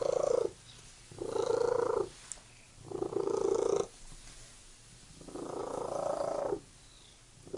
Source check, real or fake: real